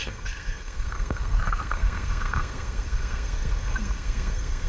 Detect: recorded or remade remade